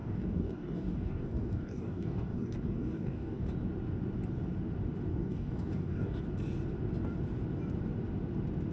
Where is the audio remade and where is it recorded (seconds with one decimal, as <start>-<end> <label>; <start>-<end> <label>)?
0.0-3.5 remade; 3.5-5.1 recorded; 5.1-6.2 remade; 6.2-8.7 recorded